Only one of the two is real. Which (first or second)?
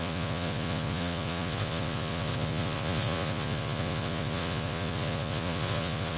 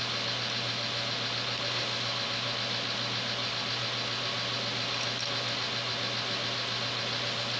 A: second